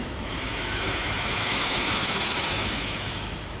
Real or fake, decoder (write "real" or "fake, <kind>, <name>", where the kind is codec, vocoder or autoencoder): fake, autoencoder, DAC-VAE